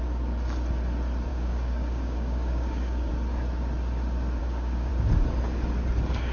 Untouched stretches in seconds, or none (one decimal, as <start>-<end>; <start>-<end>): 0.0-1.3; 3.1-4.4; 4.9-6.3